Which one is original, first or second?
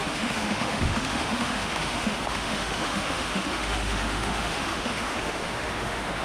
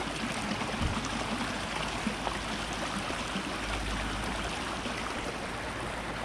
second